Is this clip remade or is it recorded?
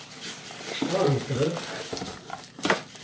remade